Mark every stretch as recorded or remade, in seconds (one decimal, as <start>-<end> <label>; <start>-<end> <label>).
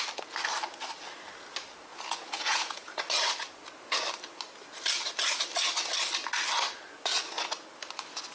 0.0-1.9 recorded; 1.9-3.0 remade; 3.0-8.3 recorded